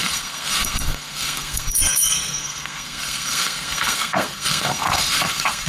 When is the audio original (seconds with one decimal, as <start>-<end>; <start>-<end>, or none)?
none